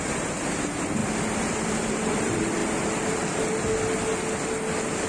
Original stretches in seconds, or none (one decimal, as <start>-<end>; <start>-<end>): 1.0-1.9; 2.6-5.1